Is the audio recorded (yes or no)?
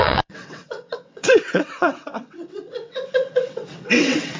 no